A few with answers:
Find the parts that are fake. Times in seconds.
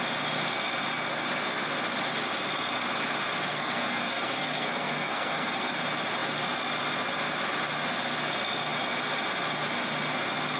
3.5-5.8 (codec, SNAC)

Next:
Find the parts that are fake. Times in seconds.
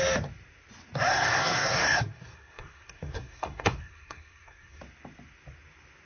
1.1-4.8 (codec, SNAC)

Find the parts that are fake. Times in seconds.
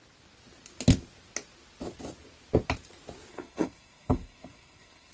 3.3-5.1 (codec, SNAC)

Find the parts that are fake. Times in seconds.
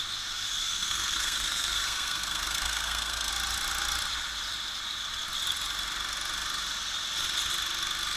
0.6-3.3 (codec, SNAC)